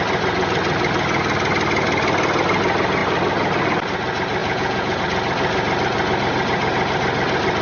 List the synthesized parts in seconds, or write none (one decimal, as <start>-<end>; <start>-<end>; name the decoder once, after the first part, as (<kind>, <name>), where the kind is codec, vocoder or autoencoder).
4.4-5.0 (vocoder, Vocos)